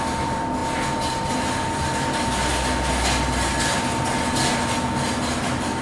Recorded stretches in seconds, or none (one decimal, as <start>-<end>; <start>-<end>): 0.6-1.3; 2.5-5.8